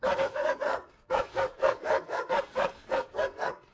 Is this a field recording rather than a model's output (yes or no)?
no